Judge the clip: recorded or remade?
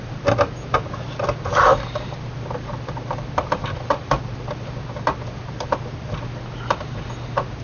recorded